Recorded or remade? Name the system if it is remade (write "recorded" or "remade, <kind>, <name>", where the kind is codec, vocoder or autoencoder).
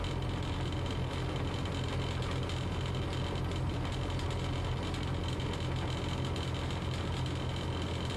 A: recorded